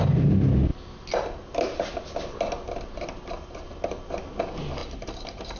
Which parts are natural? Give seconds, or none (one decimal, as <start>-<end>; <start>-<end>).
0.0-4.8